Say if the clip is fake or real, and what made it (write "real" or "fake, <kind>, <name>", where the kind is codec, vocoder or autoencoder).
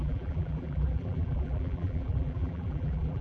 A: fake, vocoder, BigVGAN v2